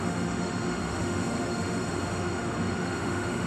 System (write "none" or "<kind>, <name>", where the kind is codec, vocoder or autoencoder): autoencoder, DAC-VAE